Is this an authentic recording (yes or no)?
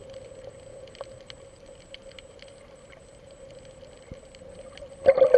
yes